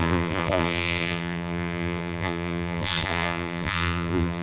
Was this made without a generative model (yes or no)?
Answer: no